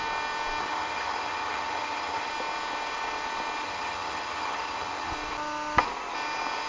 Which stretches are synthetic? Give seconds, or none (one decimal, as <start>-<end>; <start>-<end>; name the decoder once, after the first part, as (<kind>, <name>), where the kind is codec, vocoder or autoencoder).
0.6-2.3 (vocoder, HiFi-GAN); 3.6-5.1